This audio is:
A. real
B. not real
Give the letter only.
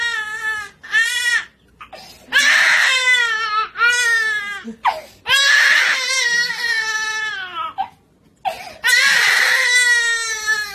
A